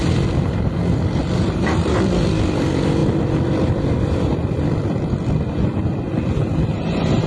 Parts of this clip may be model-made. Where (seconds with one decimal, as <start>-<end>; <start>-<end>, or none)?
1.2-7.3